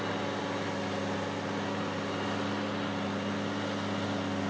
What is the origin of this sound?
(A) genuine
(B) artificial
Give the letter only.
A